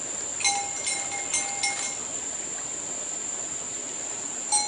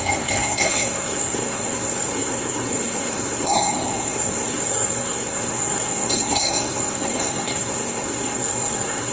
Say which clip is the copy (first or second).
second